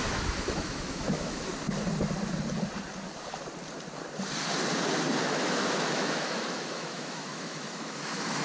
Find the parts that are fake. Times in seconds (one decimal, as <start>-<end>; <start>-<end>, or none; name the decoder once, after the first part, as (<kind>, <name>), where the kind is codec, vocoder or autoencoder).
0.0-1.5 (autoencoder, DAC-VAE); 5.2-8.4